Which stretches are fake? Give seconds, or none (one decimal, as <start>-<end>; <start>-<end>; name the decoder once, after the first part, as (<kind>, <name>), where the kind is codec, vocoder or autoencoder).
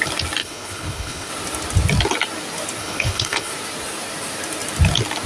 0.4-1.3 (codec, HILCodec); 2.8-3.5